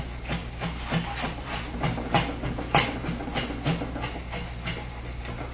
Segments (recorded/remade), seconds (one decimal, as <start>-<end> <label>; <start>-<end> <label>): 0.0-5.5 recorded

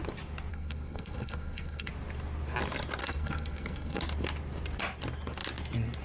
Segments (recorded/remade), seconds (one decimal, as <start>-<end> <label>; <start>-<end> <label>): 0.0-0.5 recorded; 0.5-1.9 remade; 1.9-3.0 recorded; 3.0-4.0 remade; 4.0-6.0 recorded

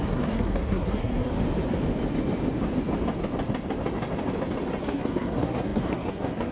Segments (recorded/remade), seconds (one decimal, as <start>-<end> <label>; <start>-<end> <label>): 0.0-1.3 remade; 1.3-4.8 recorded; 4.8-6.5 remade

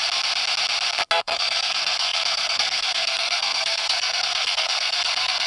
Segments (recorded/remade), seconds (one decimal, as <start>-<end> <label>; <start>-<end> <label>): 0.0-1.2 recorded; 1.2-5.5 remade

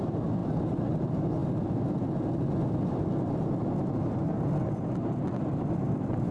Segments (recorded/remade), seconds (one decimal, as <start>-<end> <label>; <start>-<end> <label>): 0.0-6.3 recorded

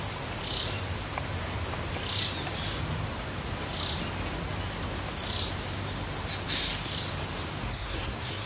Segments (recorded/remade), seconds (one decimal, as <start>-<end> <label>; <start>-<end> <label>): 0.0-7.6 recorded; 7.6-8.5 remade

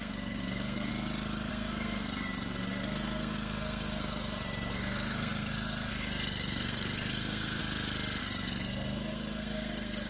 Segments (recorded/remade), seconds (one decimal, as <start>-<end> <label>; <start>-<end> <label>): 0.0-0.9 remade; 0.9-1.5 recorded; 1.5-7.6 remade; 7.6-8.2 recorded; 8.2-10.1 remade

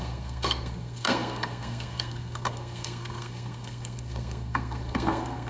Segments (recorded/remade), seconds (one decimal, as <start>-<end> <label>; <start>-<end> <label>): 0.0-5.5 remade